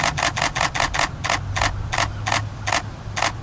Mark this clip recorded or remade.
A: recorded